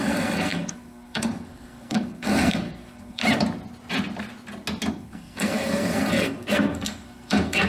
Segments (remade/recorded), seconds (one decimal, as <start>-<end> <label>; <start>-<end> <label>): 0.0-3.2 remade; 3.2-4.9 recorded; 4.9-7.7 remade